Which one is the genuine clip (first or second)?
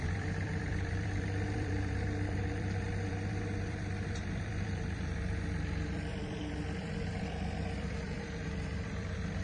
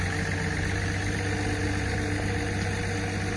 second